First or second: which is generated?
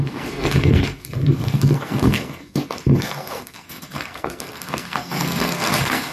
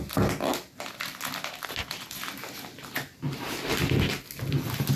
first